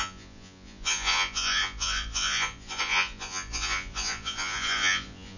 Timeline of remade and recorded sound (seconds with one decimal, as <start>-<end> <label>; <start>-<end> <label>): 0.0-5.4 remade